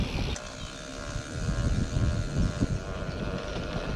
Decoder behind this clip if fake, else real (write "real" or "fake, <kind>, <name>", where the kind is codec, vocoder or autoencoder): real